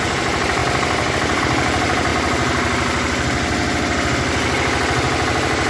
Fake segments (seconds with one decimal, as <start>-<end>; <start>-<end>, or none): 0.0-0.6; 1.4-2.1